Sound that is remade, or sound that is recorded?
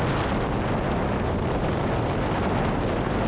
recorded